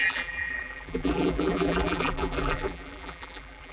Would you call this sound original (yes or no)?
no